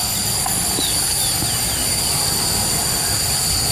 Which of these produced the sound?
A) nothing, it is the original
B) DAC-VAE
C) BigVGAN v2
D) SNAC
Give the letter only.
A